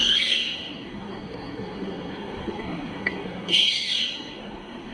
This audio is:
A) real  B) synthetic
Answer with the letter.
B